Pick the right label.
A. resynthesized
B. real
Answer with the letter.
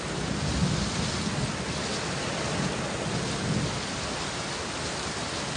B